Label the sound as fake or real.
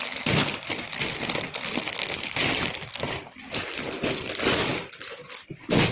real